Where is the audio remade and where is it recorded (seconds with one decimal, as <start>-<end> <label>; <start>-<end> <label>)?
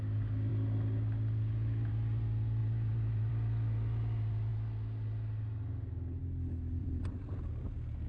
0.0-2.6 recorded; 2.6-3.3 remade; 3.3-6.8 recorded; 6.8-7.4 remade; 7.4-8.1 recorded